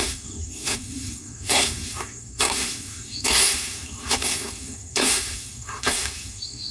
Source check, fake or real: fake